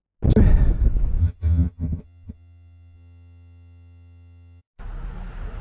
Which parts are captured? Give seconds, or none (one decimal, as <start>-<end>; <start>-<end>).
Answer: 0.0-1.2; 4.6-5.6